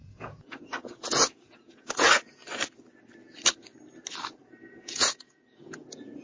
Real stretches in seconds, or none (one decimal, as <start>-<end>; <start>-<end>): 2.4-4.8